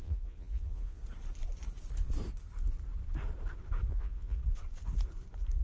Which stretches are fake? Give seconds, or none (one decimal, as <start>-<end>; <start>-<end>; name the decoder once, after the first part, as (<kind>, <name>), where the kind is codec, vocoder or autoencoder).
0.0-1.0 (vocoder, Vocos); 3.9-4.4